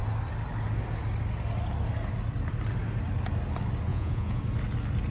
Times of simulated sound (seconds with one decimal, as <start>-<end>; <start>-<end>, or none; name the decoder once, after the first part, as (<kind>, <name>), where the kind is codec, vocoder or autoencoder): 3.9-4.4 (vocoder, Vocos)